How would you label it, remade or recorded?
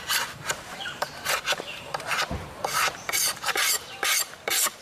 remade